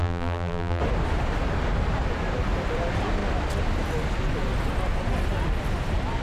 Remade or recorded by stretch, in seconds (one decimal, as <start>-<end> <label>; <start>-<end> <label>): 0.0-0.8 remade; 0.8-6.2 recorded